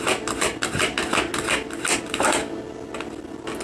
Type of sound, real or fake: real